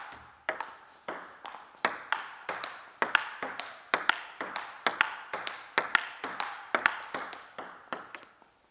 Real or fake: real